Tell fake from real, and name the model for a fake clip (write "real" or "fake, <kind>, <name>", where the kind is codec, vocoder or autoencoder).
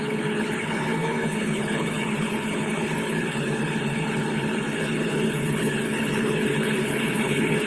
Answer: fake, codec, HILCodec